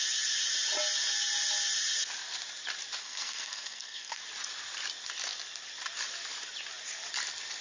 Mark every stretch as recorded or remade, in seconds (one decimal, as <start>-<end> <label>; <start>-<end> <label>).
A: 0.0-3.0 recorded; 3.0-4.2 remade; 4.2-7.6 recorded